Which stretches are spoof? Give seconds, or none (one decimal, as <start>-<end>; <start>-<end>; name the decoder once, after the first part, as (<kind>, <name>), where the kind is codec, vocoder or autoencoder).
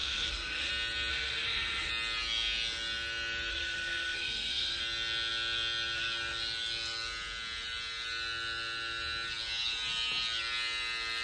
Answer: 0.0-0.7 (codec, SNAC); 1.1-1.9; 3.5-4.8